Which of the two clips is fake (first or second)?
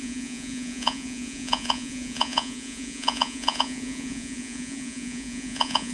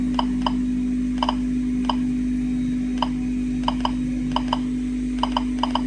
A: first